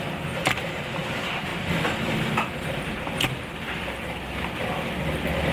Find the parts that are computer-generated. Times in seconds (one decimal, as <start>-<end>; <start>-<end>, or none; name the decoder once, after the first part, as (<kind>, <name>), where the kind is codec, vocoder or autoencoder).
none